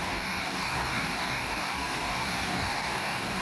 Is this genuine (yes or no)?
no